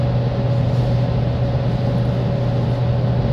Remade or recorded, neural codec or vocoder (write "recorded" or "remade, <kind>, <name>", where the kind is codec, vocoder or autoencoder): recorded